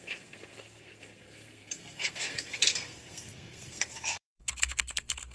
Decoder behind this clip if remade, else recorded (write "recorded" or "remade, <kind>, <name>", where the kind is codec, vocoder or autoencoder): remade, codec, SNAC